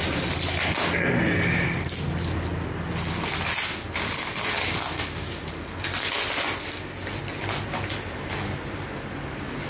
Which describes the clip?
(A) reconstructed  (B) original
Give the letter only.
B